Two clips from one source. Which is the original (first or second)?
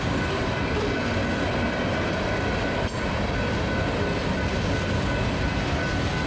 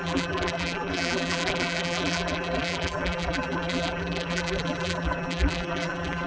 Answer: first